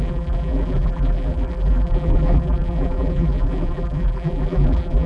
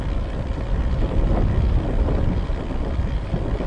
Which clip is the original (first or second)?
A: second